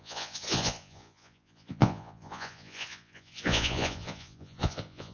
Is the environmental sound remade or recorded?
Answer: remade